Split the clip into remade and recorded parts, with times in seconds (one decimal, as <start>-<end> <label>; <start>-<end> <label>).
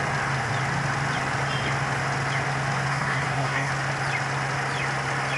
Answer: 0.0-2.9 recorded; 2.9-3.7 remade; 3.7-5.4 recorded